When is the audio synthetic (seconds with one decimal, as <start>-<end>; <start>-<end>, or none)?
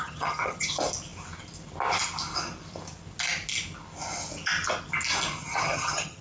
0.0-0.7; 5.4-6.2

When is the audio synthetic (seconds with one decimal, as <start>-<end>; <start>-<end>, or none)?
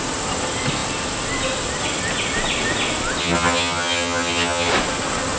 3.2-4.7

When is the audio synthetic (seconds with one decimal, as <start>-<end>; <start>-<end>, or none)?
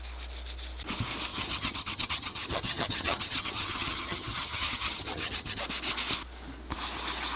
1.3-5.6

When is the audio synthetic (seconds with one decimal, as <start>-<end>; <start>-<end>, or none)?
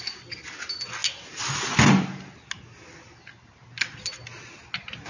none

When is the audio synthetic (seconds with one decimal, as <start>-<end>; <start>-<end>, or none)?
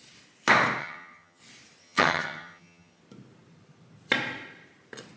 0.8-1.4; 1.8-3.0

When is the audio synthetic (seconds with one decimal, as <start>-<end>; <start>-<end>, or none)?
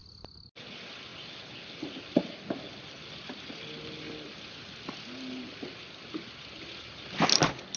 none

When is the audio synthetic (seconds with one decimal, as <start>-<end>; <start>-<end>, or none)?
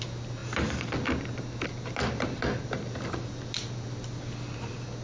none